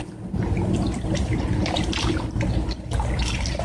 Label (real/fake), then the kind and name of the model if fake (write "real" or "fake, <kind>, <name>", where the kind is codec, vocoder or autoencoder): real